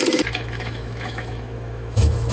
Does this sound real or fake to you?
fake